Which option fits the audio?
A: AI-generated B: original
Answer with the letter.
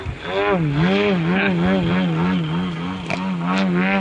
B